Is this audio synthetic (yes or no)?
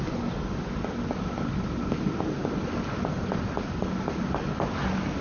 no